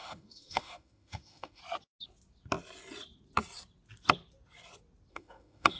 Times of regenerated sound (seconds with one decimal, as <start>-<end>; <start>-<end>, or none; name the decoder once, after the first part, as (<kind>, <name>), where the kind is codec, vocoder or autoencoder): 0.0-1.6 (autoencoder, DAC-VAE); 5.1-5.8